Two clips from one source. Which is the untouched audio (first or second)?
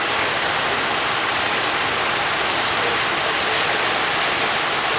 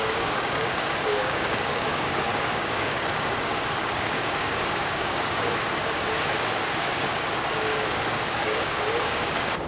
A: first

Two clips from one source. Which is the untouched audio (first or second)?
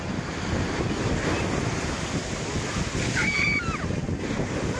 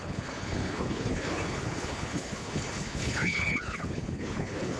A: first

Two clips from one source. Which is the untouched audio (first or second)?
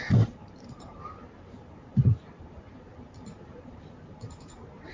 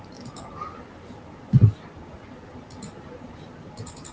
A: second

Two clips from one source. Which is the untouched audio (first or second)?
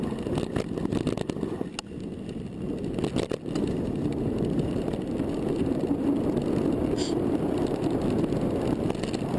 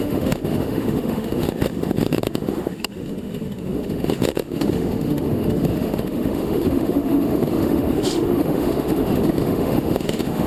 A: first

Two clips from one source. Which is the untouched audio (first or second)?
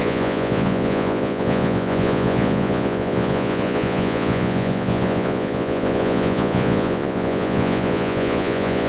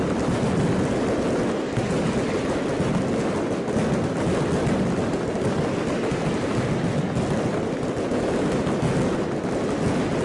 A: second